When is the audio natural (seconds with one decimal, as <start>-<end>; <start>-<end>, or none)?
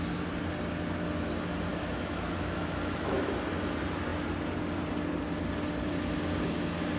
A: 0.0-1.7; 3.1-7.0